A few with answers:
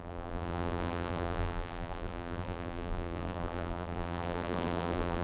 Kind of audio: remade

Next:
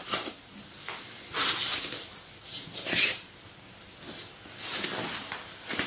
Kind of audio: remade